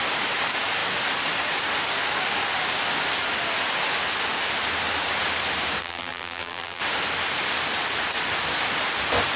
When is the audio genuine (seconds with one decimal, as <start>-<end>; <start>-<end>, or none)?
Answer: 0.0-5.8; 6.8-9.4